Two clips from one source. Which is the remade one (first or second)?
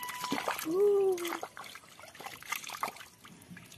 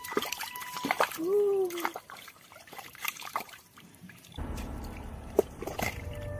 second